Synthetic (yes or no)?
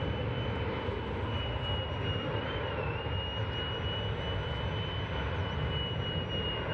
no